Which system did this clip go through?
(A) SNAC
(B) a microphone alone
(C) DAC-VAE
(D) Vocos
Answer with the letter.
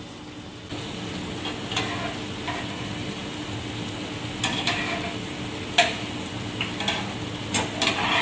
B